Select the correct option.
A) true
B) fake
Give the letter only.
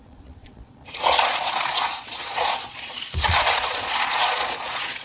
B